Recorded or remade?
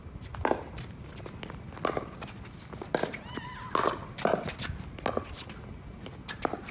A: recorded